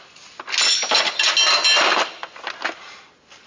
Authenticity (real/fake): real